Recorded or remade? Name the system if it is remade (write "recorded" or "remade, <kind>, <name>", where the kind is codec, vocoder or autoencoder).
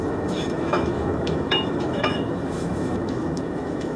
remade, autoencoder, DAC-VAE